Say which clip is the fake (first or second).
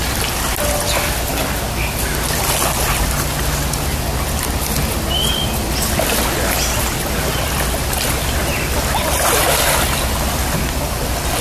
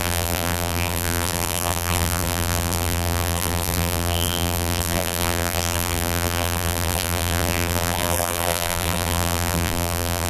second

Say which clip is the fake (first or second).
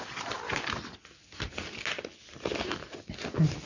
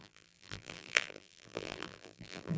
second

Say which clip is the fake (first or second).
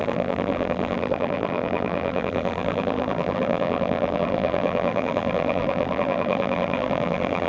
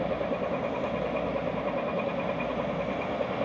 first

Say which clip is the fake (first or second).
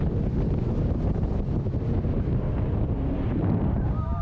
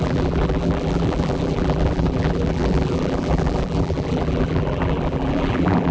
second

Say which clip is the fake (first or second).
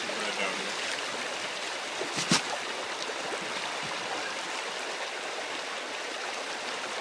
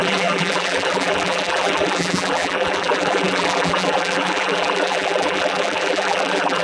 second